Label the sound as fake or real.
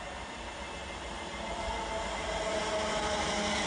real